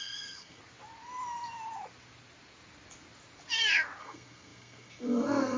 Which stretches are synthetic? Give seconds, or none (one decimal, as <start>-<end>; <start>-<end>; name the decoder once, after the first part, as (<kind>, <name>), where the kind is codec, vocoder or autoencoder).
0.0-0.6 (codec, SNAC); 4.0-5.6